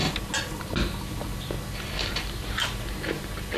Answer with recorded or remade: recorded